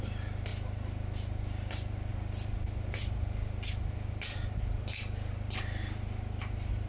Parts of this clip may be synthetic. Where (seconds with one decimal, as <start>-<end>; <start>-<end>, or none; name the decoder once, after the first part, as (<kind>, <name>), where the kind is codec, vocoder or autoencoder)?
none